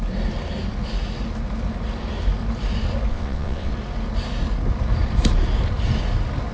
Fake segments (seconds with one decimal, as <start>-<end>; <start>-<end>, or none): 3.1-3.7